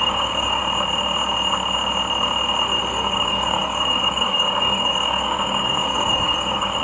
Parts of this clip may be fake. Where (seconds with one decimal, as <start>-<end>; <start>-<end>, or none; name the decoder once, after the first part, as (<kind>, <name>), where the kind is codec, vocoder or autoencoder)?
0.0-0.6 (codec, DAC); 2.9-6.8